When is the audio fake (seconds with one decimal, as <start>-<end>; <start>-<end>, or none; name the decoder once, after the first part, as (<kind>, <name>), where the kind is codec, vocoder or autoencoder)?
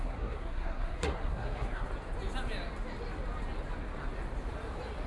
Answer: 0.0-1.9 (codec, SNAC)